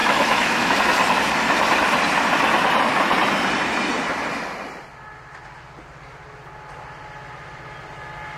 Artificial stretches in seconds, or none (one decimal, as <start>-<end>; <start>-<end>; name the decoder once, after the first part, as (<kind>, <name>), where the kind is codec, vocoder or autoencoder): 0.0-0.8 (autoencoder, DAC-VAE)